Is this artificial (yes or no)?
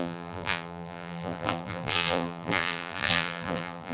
yes